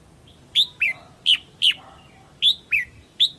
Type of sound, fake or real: real